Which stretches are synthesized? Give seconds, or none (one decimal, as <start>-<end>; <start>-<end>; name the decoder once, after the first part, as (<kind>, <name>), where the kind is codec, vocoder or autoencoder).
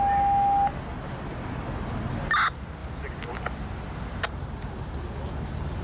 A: 2.8-3.4 (vocoder, BigVGAN v2)